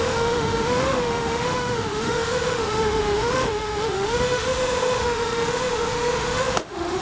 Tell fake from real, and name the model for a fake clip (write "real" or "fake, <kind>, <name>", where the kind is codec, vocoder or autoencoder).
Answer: fake, autoencoder, DAC-VAE